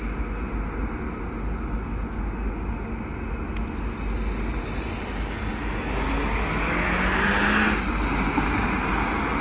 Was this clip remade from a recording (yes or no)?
no